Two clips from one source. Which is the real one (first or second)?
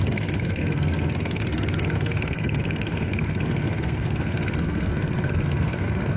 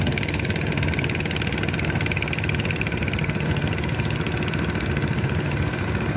second